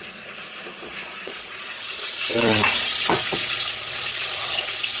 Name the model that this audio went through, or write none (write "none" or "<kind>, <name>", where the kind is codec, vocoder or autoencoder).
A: vocoder, Vocos